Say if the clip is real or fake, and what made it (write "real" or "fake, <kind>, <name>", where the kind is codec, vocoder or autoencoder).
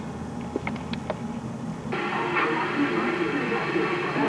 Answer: real